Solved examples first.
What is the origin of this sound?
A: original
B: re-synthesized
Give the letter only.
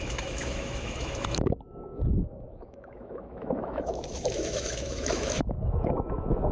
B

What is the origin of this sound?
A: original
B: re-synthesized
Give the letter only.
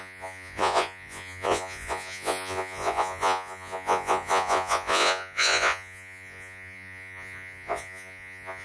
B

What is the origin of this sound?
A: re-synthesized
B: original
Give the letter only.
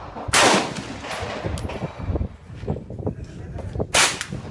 B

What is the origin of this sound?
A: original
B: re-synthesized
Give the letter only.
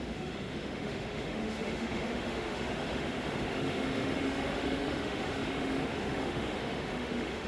B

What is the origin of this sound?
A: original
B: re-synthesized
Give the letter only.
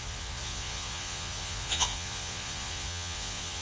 B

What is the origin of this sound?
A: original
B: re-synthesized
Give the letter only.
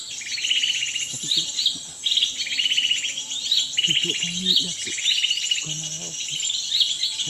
A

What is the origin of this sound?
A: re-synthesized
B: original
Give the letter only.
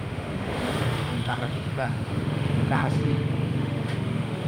A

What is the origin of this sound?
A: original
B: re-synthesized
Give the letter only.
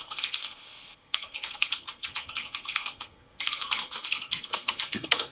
B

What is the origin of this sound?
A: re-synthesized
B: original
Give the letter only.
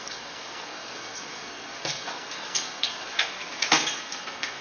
A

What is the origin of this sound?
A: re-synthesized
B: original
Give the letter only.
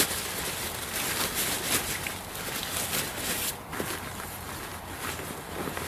B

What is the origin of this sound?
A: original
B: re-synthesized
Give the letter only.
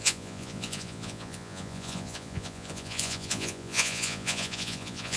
B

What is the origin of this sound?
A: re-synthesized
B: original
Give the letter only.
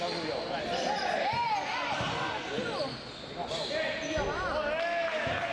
B